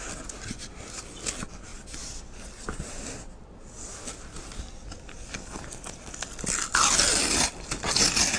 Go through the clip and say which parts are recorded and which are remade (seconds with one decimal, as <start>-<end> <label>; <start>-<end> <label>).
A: 0.0-8.4 recorded